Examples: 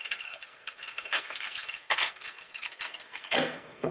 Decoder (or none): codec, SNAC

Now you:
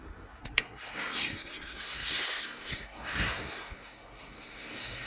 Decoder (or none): codec, SNAC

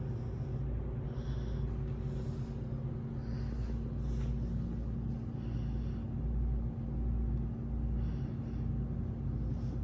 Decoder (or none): none